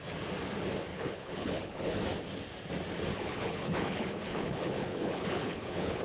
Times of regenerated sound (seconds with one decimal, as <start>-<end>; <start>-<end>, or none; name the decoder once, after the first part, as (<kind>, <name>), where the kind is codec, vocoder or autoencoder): 0.9-2.0 (codec, HILCodec); 3.1-6.0